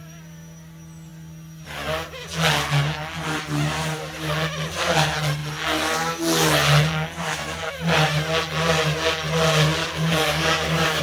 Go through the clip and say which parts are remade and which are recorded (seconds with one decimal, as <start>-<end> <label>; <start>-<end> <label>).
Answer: 0.0-9.8 recorded; 9.8-11.0 remade